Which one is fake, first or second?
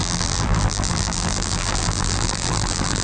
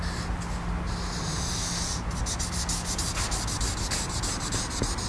first